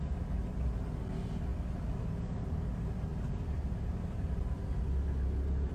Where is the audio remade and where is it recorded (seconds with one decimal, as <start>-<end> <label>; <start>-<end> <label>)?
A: 0.0-3.1 recorded; 3.1-4.6 remade; 4.6-5.7 recorded